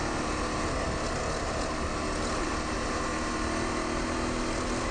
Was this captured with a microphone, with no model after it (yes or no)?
yes